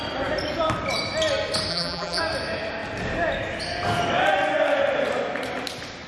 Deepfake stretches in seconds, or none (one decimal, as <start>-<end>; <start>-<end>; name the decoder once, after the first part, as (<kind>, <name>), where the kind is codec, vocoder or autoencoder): 1.7-2.2 (vocoder, BigVGAN v2)